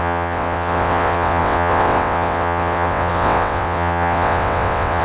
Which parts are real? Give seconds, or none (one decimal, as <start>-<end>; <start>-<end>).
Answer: none